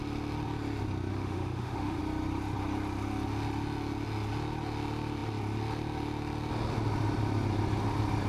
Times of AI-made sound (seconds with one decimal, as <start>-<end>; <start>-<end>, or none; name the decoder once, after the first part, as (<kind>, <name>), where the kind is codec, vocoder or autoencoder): 1.1-2.0 (autoencoder, DAC-VAE)